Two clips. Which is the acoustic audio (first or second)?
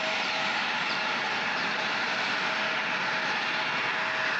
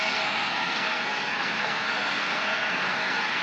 first